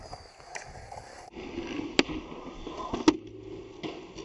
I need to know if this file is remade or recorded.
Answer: recorded